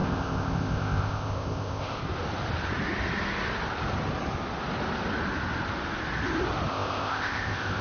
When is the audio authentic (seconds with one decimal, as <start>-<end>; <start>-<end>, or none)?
2.0-6.7